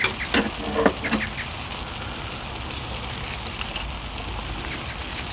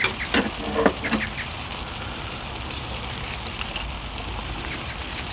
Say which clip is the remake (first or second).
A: second